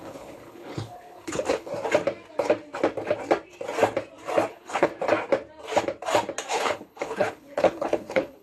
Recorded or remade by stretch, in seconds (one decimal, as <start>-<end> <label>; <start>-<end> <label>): 0.0-1.7 remade; 1.7-4.5 recorded; 4.5-4.9 remade; 4.9-6.5 recorded; 6.5-8.4 remade